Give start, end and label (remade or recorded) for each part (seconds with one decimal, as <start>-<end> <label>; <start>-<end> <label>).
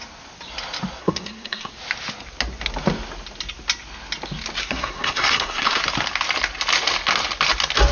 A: 0.0-1.0 recorded; 1.0-1.7 remade; 1.7-4.6 recorded; 4.6-5.8 remade; 5.8-7.9 recorded